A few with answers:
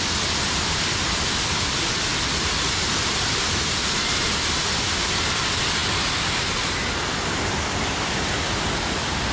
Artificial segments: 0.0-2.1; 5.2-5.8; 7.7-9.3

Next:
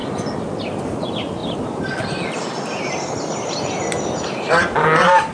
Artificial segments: 1.0-5.3